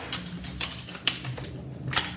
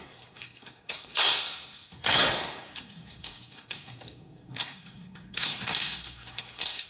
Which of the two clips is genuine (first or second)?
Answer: first